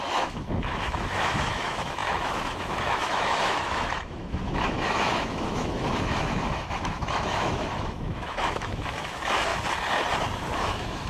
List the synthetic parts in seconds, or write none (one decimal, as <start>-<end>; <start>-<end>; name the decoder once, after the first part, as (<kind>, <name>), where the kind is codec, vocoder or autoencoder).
0.0-9.5 (autoencoder, DAC-VAE); 10.6-11.1